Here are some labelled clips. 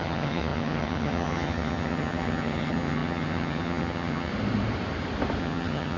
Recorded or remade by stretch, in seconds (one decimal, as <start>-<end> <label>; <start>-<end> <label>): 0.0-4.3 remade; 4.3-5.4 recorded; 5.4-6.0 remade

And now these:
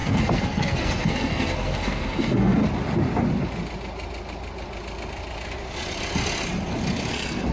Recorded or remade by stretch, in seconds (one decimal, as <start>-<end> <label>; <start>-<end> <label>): 0.0-2.6 remade; 2.6-7.1 recorded; 7.1-7.5 remade

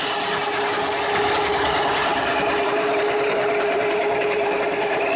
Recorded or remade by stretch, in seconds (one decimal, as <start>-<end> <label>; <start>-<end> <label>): 0.0-2.0 recorded; 2.0-5.2 remade